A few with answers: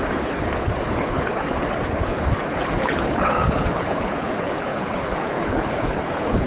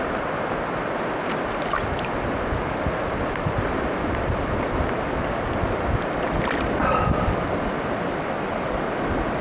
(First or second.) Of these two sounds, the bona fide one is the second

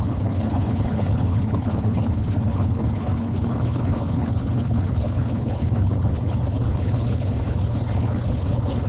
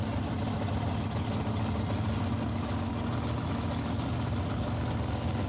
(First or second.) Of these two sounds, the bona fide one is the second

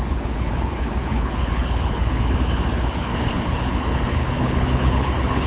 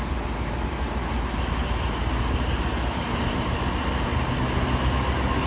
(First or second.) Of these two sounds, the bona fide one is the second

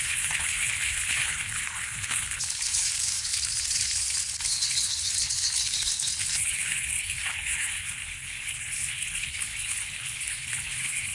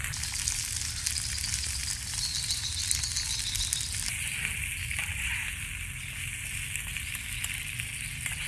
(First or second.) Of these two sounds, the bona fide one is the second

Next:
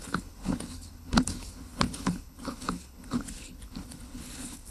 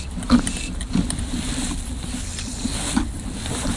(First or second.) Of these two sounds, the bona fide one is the second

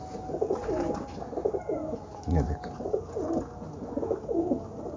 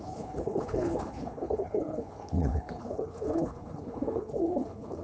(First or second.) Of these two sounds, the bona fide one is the first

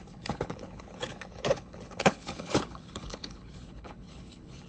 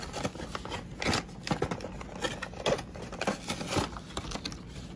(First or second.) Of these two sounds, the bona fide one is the second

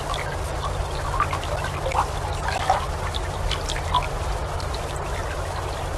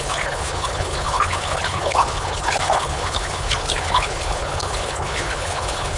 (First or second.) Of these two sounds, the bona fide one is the first